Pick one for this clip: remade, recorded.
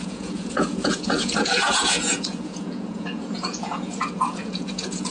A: remade